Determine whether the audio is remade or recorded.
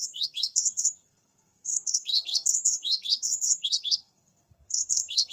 remade